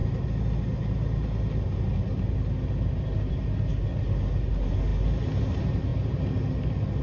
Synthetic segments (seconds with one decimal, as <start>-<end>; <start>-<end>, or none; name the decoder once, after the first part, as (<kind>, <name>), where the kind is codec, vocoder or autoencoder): none